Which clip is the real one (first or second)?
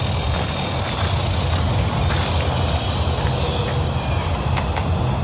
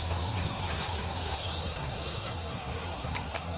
first